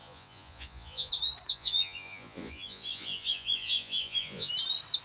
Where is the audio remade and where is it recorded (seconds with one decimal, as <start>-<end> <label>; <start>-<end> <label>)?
0.0-1.1 remade; 1.1-1.5 recorded; 1.5-4.5 remade; 4.5-5.0 recorded